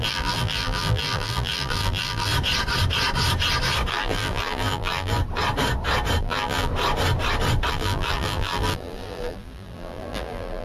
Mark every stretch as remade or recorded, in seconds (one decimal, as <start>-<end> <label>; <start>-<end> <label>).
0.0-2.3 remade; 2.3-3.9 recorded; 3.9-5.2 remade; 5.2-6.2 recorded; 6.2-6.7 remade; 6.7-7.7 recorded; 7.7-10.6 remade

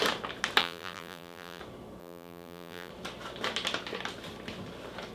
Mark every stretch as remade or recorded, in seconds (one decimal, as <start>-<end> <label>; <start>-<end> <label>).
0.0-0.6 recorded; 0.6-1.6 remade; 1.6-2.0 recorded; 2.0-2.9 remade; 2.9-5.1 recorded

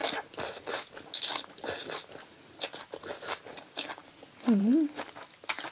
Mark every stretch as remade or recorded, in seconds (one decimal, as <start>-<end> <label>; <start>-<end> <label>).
0.0-4.0 recorded; 4.0-4.6 remade; 4.6-5.7 recorded

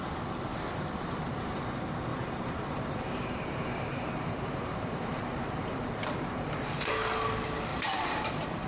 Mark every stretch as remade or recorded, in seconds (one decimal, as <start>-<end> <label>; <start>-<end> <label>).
0.0-0.5 recorded; 0.5-1.2 remade; 1.2-2.1 recorded; 2.1-6.9 remade; 6.9-7.7 recorded; 7.7-8.7 remade